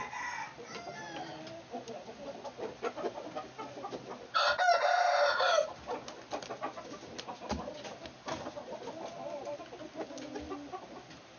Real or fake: real